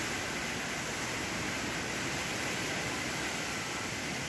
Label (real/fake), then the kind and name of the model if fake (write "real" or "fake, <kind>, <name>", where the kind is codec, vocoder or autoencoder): real